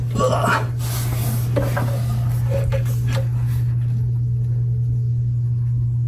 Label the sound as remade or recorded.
recorded